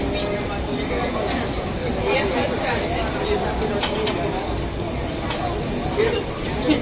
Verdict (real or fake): real